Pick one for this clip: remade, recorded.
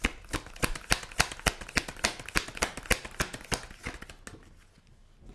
recorded